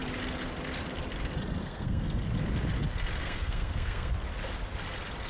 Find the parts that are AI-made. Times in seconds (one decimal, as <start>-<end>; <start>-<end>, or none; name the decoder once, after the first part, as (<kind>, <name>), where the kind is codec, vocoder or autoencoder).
1.6-2.2 (codec, SNAC); 3.2-4.1